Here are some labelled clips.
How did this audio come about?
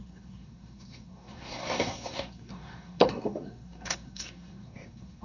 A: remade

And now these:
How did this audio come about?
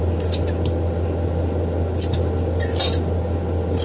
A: recorded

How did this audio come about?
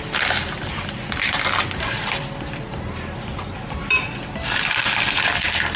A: recorded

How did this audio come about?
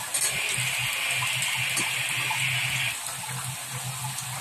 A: recorded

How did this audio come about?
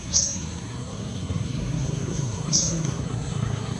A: remade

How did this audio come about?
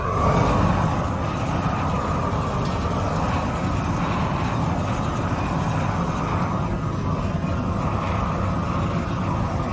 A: recorded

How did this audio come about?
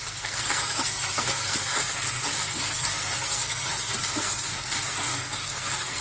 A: remade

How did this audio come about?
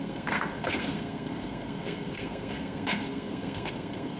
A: remade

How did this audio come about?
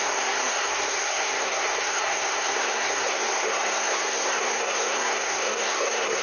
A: remade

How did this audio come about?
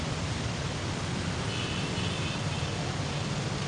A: recorded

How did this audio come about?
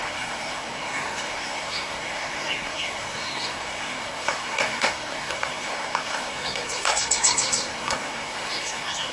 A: remade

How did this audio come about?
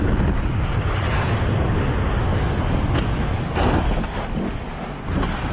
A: recorded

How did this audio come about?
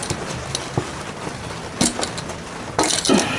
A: recorded